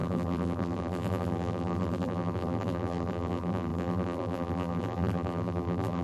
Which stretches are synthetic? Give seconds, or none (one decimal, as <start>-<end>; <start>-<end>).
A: 0.0-6.0